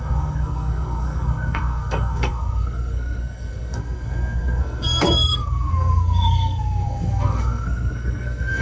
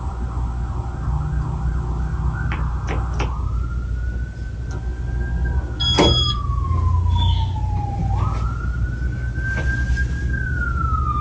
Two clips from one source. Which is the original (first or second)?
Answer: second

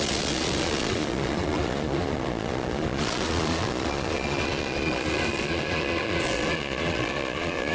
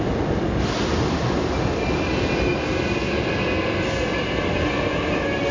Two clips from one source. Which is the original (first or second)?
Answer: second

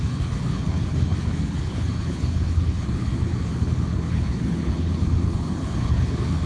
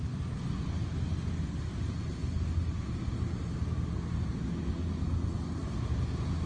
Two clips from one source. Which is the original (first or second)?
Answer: second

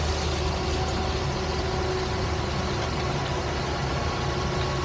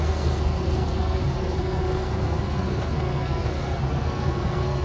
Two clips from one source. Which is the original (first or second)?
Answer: first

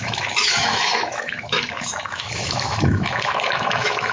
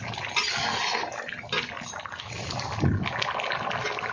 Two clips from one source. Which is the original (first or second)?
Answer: second